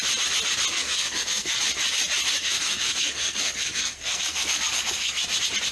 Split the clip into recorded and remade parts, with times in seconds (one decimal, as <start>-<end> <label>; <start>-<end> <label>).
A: 0.0-0.7 recorded; 0.7-1.6 remade; 1.6-2.4 recorded; 2.4-5.2 remade; 5.2-5.7 recorded